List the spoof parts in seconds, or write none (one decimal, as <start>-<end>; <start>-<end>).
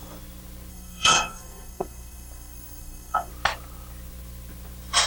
0.7-3.3